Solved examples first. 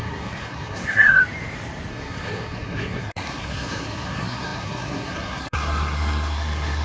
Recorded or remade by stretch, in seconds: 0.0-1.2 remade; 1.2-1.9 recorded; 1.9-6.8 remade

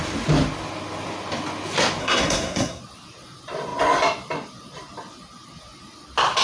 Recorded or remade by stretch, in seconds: 0.0-2.0 recorded; 2.0-2.8 remade; 2.8-6.4 recorded

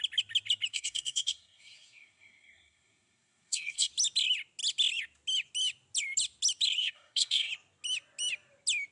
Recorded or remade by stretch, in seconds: 0.0-0.7 recorded; 0.7-3.9 remade; 3.9-6.8 recorded; 6.8-7.5 remade; 7.5-8.9 recorded

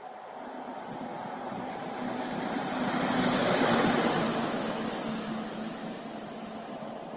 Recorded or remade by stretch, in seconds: 0.0-7.2 recorded